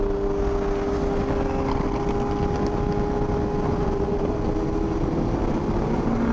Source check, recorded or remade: recorded